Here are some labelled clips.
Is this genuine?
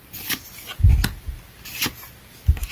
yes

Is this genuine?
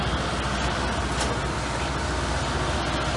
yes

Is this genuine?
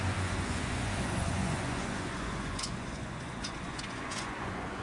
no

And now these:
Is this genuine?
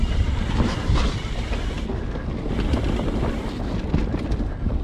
yes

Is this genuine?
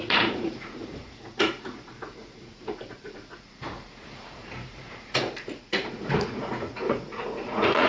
no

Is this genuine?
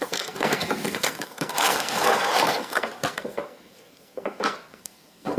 no